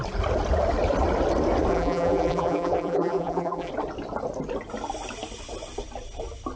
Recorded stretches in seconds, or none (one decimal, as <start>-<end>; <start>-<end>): 0.0-1.7; 3.7-6.6